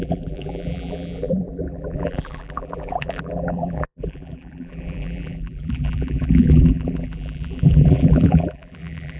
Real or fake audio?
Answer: fake